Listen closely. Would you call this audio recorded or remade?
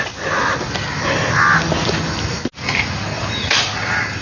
recorded